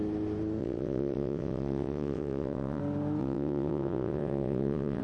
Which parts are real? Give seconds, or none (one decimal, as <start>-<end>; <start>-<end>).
0.0-0.6; 2.8-3.2